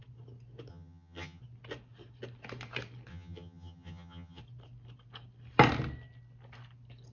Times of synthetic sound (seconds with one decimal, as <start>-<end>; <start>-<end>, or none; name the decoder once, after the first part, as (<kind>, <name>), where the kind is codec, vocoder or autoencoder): 0.7-1.4 (vocoder, HiFi-GAN); 3.1-4.4